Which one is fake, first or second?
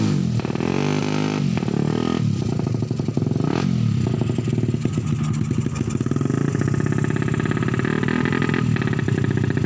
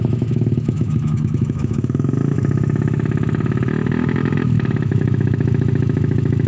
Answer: second